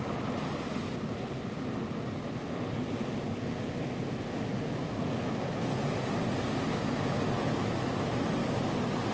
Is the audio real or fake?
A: real